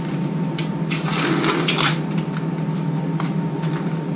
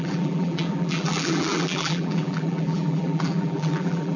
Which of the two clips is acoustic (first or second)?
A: first